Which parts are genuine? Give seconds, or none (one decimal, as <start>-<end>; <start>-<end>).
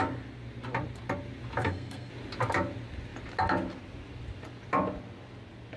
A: 0.0-1.6; 2.1-5.8